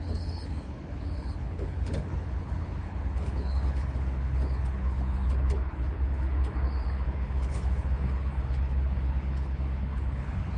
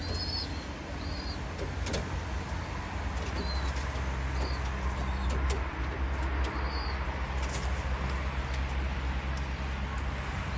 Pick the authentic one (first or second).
second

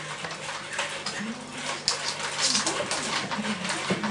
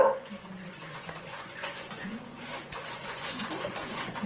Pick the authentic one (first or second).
first